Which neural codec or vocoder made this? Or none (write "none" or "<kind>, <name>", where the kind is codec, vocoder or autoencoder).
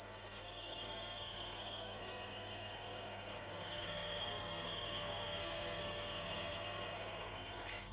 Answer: codec, SNAC